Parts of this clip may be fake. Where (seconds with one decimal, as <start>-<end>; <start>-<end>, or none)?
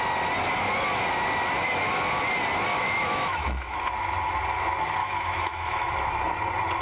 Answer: 2.7-3.9; 5.0-5.9